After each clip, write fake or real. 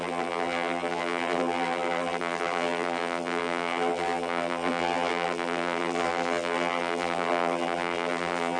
fake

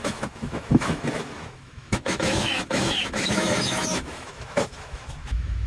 fake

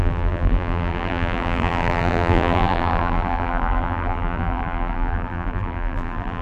fake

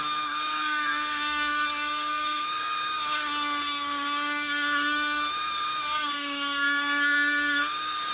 fake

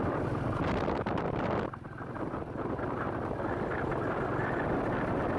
real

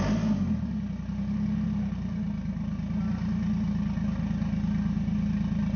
real